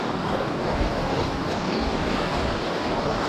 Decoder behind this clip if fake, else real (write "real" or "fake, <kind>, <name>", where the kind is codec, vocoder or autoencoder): fake, codec, DAC